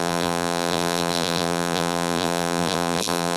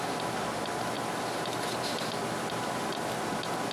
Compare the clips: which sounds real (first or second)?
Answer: second